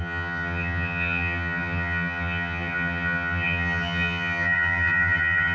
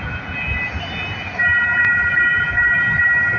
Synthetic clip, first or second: first